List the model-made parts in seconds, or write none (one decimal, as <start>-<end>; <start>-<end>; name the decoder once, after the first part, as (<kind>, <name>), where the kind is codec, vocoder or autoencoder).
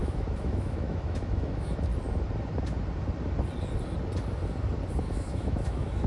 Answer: 0.0-1.9 (autoencoder, DAC-VAE); 5.0-6.1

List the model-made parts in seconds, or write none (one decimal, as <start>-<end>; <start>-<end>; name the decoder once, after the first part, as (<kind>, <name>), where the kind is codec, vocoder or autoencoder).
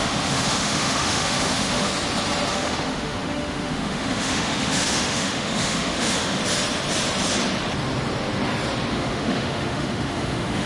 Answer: 0.0-1.9 (autoencoder, DAC-VAE); 2.5-6.4; 8.9-10.7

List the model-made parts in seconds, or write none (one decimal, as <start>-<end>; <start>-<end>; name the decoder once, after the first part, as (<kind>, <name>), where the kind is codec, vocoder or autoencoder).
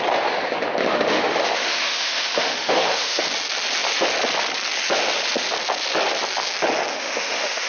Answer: 0.9-3.2 (autoencoder, DAC-VAE); 6.9-7.7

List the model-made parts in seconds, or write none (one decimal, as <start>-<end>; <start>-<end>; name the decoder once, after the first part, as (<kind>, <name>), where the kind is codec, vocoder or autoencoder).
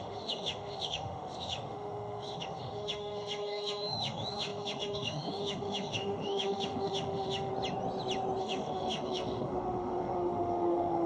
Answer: 0.0-7.5 (autoencoder, DAC-VAE); 8.4-11.1